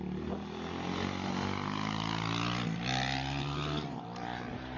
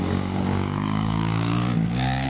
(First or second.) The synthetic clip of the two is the second